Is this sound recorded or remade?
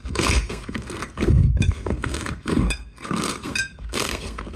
remade